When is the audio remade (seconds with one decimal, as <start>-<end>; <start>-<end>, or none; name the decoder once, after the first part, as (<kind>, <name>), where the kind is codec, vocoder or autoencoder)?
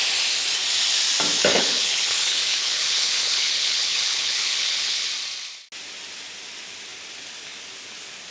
1.5-5.1 (codec, HILCodec)